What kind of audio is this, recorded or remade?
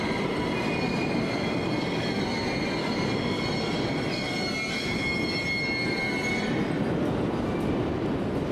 recorded